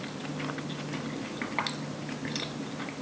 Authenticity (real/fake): real